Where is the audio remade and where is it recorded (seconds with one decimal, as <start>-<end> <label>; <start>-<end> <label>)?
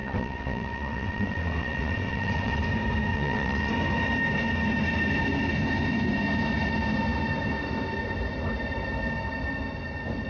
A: 0.0-2.6 remade; 2.6-3.1 recorded; 3.1-3.7 remade; 3.7-10.3 recorded